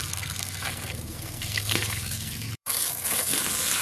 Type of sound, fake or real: fake